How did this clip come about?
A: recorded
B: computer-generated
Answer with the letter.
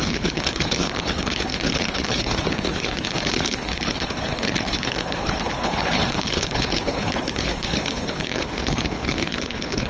B